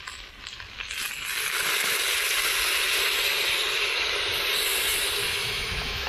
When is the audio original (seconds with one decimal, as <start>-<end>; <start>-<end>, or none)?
0.0-5.2